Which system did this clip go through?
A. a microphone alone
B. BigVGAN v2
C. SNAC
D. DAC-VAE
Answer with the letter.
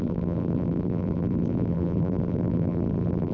B